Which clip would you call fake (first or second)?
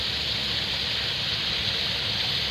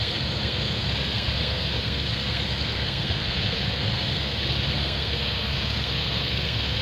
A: second